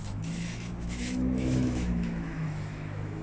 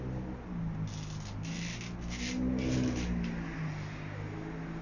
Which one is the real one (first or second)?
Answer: second